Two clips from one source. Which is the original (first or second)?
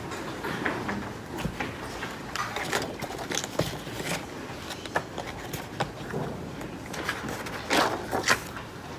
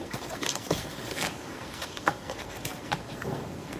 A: first